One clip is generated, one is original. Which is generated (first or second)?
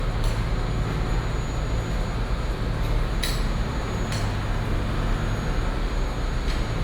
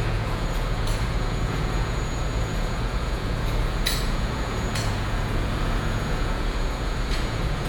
second